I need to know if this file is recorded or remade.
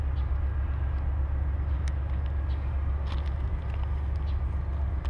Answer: recorded